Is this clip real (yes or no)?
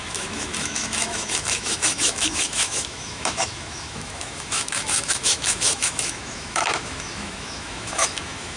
no